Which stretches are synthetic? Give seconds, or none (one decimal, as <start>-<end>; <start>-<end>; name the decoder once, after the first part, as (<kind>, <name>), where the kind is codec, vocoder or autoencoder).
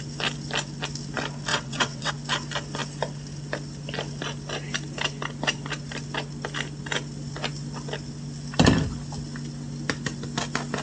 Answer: 1.5-2.1 (vocoder, WaveNeXt)